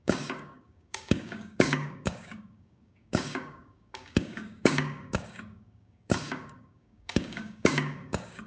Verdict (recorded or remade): remade